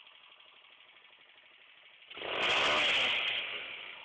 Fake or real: real